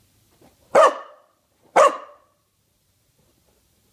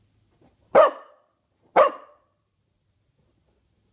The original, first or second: second